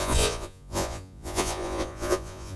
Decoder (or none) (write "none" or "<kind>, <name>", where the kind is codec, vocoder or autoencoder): vocoder, Vocos